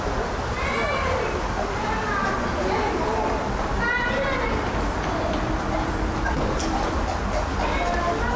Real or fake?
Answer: real